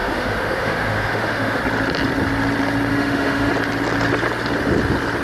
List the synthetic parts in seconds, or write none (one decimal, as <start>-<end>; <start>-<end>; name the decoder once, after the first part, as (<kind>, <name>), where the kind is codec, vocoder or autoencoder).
0.0-1.6 (autoencoder, DAC-VAE); 2.9-3.5